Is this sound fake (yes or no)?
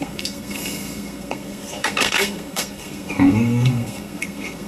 yes